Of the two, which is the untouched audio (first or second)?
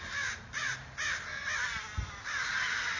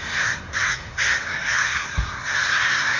first